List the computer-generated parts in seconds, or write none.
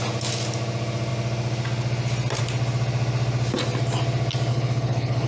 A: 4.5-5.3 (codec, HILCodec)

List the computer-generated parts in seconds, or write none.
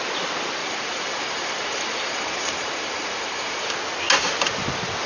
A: 0.6-3.7 (vocoder, BigVGAN v2)